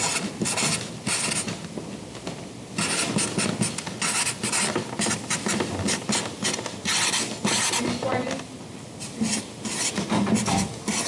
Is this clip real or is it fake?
real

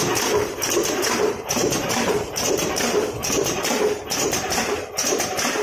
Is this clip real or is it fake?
fake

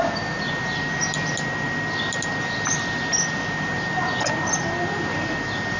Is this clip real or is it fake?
real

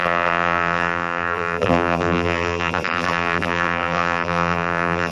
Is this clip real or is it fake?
fake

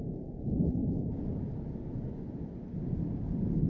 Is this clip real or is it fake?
fake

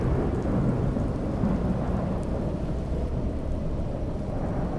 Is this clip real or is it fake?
real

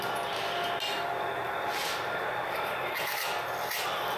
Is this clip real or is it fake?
real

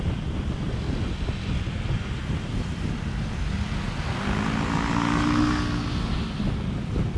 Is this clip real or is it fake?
real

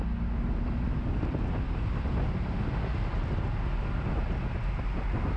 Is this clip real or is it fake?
real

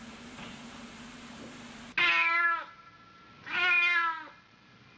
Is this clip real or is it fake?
real